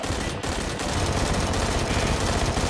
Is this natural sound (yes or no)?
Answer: yes